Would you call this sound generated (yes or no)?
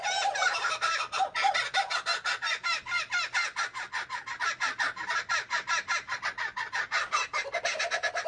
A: no